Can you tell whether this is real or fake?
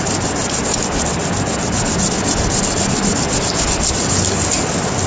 real